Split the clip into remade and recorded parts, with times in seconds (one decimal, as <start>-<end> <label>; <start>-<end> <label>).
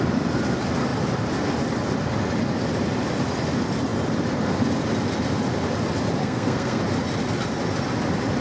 0.0-6.2 recorded; 6.2-6.8 remade; 6.8-8.4 recorded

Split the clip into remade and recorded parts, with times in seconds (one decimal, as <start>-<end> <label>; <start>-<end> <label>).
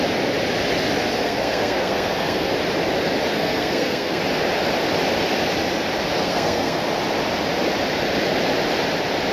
0.0-1.2 recorded; 1.2-2.5 remade; 2.5-3.3 recorded; 3.3-4.2 remade; 4.2-6.2 recorded; 6.2-6.8 remade; 6.8-9.3 recorded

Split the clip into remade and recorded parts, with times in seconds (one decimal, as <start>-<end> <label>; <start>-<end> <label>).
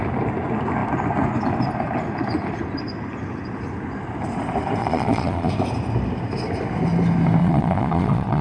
0.0-4.8 recorded; 4.8-5.5 remade; 5.5-7.4 recorded; 7.4-8.4 remade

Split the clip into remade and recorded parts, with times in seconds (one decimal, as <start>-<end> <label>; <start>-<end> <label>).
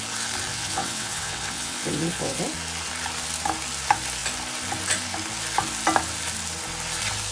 0.0-0.5 recorded; 0.5-2.4 remade; 2.4-7.3 recorded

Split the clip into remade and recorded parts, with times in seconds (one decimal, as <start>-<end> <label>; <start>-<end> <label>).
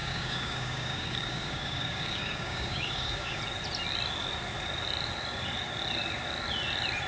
0.0-3.4 remade; 3.4-7.1 recorded